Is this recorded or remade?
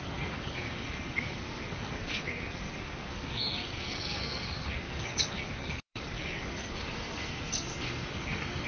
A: remade